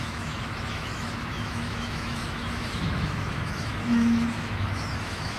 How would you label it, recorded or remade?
remade